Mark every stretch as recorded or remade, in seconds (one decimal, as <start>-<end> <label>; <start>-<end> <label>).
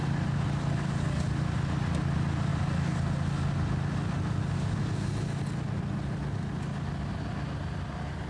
0.0-8.3 recorded